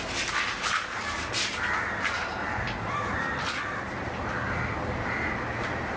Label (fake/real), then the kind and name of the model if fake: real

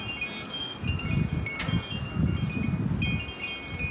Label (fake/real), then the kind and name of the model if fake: real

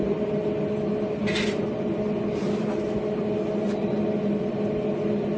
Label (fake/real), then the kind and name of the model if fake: real